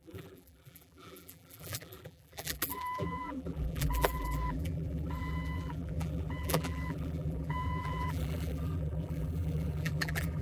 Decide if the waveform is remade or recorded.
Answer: remade